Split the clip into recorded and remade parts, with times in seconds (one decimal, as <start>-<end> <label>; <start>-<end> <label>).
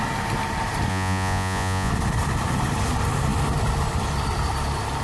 0.0-0.9 recorded; 0.9-1.9 remade; 1.9-5.0 recorded